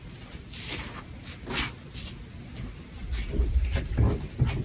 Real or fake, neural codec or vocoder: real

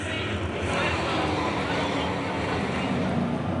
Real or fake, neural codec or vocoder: real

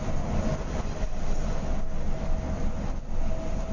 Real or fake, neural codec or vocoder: real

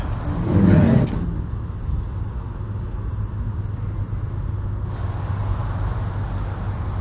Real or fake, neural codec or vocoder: real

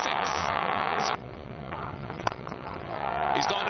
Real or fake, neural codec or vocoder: fake, vocoder, WaveNeXt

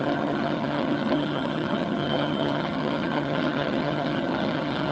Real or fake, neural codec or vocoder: fake, vocoder, HiFi-GAN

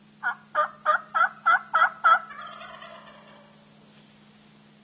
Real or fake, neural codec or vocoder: real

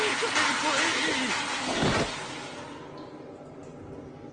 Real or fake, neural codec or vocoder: real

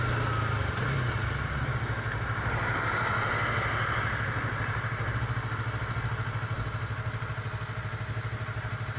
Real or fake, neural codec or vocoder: real